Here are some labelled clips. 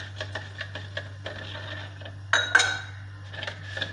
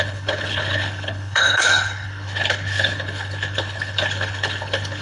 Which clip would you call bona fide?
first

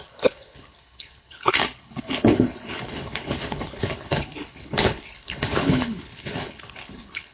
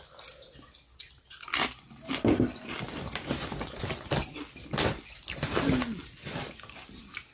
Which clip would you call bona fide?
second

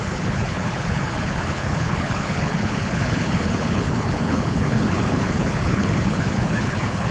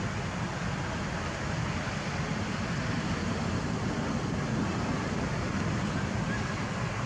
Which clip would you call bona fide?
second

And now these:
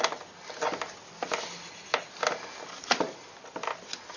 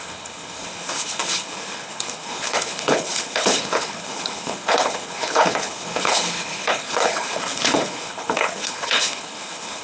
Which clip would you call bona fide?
first